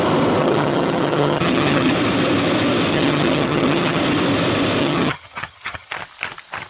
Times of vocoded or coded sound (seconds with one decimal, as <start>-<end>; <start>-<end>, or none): 0.4-1.9; 2.9-4.0; 4.8-5.9